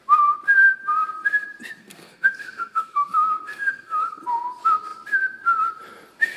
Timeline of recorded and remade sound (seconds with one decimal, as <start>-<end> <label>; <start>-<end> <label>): 0.0-1.8 recorded; 1.8-4.2 remade; 4.2-6.4 recorded